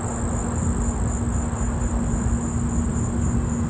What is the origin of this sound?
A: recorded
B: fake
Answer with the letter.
A